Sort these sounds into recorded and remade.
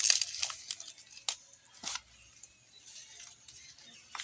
recorded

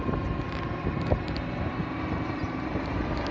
remade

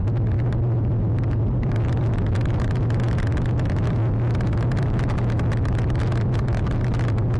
recorded